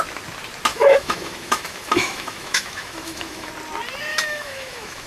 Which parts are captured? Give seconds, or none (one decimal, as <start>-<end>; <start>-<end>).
0.0-0.7; 3.5-4.1